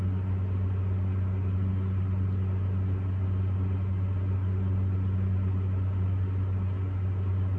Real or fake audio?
real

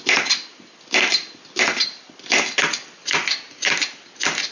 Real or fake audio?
real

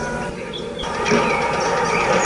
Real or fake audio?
real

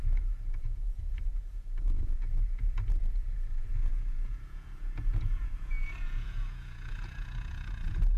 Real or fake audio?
fake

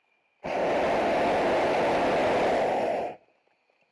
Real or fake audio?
real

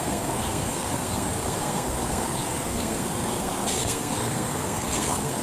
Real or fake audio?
fake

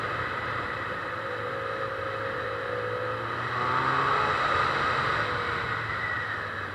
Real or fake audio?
real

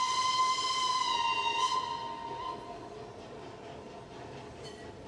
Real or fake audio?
real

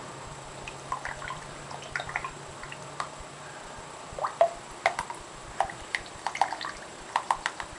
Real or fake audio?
fake